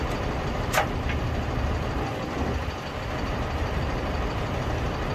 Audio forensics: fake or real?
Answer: fake